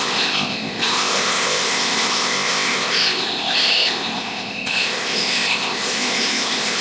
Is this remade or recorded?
remade